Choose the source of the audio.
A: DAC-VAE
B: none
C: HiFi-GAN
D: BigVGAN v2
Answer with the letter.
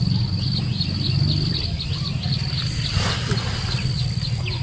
B